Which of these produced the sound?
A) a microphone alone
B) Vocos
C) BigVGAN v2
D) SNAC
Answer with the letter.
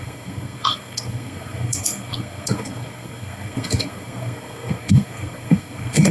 D